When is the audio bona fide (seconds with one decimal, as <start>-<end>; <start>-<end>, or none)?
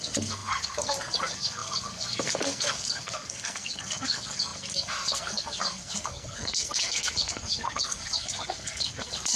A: none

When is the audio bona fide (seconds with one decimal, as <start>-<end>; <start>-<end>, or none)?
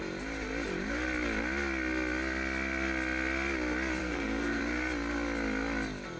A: 0.0-4.0; 4.6-6.2